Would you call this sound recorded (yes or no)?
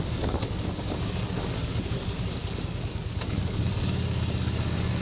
no